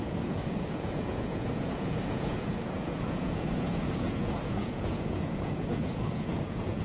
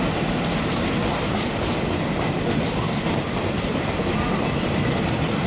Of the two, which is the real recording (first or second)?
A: second